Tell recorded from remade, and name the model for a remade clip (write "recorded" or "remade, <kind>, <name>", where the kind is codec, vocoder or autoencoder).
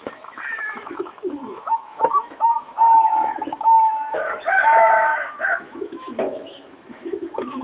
remade, autoencoder, DAC-VAE